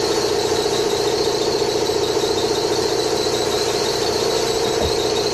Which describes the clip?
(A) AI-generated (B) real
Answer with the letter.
B